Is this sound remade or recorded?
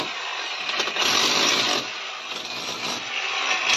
recorded